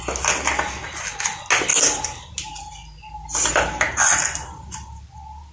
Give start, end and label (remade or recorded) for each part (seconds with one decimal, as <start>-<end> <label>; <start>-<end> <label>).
0.0-5.5 recorded